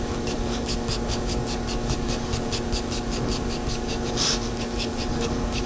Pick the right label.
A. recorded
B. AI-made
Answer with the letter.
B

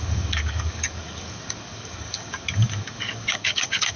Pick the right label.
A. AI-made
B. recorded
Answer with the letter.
A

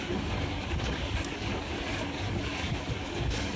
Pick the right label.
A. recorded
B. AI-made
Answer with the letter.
B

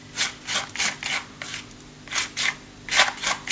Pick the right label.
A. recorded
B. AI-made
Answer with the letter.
A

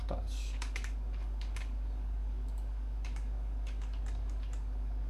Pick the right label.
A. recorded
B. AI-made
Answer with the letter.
B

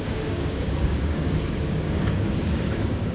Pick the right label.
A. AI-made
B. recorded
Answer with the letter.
A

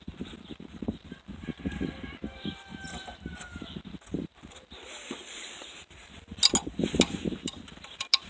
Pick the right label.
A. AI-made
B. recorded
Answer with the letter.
B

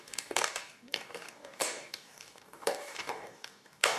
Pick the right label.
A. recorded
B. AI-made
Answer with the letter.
B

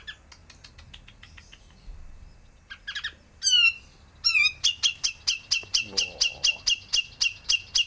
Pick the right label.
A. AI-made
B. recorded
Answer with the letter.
B